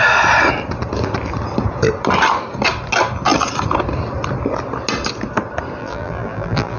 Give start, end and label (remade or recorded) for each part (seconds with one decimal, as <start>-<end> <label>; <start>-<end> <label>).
0.0-5.8 recorded; 5.8-6.8 remade